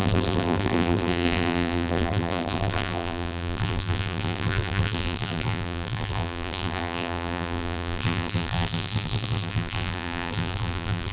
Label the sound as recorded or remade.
remade